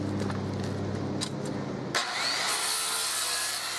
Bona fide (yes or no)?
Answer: yes